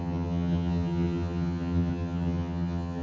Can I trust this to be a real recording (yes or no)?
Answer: no